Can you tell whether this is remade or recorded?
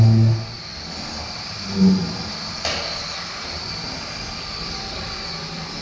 recorded